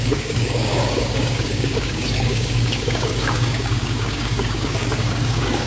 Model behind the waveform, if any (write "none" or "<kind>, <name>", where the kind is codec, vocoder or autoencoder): codec, DAC